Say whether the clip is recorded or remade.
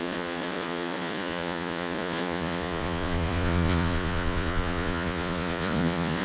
remade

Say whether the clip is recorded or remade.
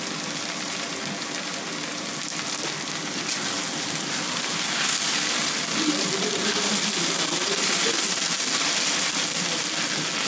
recorded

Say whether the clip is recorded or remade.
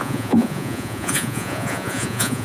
remade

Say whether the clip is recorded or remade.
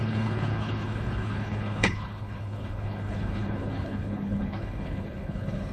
remade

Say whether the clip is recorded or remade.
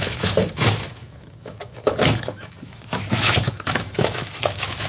remade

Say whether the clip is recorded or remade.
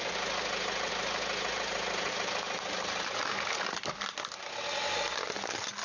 recorded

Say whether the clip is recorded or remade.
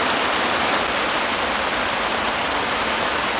recorded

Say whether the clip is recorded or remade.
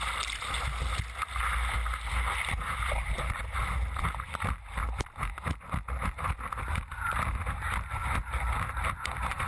recorded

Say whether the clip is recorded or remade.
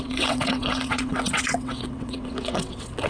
remade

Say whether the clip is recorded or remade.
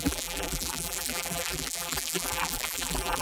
remade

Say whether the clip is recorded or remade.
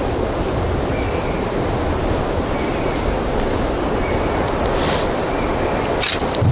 recorded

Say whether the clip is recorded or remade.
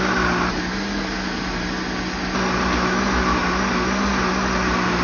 recorded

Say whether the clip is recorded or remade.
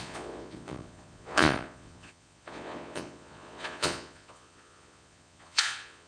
remade